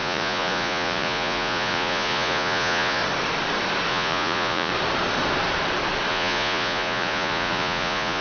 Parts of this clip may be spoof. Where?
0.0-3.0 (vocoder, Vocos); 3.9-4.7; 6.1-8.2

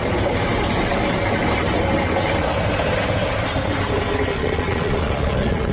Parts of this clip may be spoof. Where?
4.3-5.7 (vocoder, Vocos)

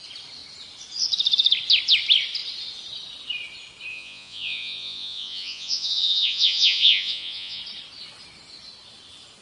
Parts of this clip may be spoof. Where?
3.9-7.6 (vocoder, Vocos)

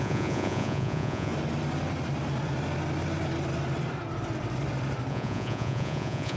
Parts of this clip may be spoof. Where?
0.0-1.3 (vocoder, Vocos); 5.1-6.4

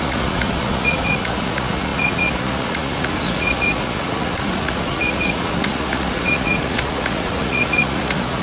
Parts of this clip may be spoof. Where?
0.0-8.4 (vocoder, Vocos)

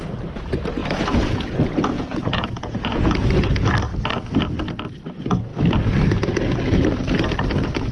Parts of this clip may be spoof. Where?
0.8-3.5 (vocoder, Vocos)